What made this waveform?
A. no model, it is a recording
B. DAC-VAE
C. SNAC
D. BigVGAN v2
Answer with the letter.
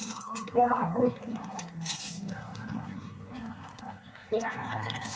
C